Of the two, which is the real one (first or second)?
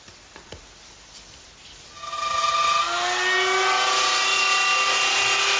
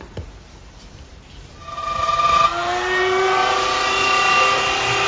first